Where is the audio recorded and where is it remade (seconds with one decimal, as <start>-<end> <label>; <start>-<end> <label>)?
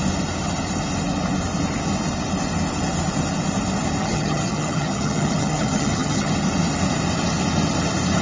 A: 0.0-4.0 recorded; 4.0-6.3 remade; 6.3-8.2 recorded